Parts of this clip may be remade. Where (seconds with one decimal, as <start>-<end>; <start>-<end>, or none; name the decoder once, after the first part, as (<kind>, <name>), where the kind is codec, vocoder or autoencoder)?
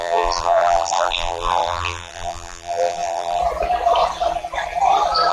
0.0-3.4 (vocoder, BigVGAN v2)